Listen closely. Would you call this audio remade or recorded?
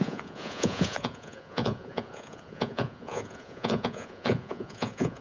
remade